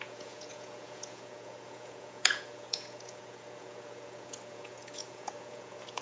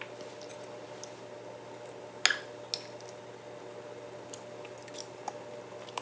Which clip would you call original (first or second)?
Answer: second